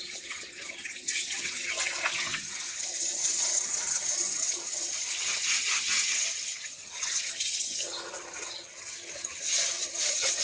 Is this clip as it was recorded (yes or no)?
no